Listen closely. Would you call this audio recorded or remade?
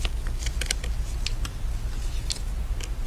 recorded